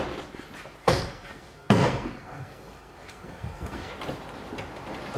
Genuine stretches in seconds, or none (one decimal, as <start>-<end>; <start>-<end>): 0.0-0.8; 3.9-5.2